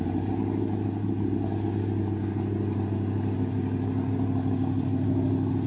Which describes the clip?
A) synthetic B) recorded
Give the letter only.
B